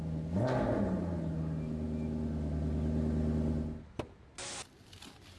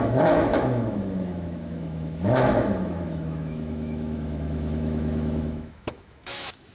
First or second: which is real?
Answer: first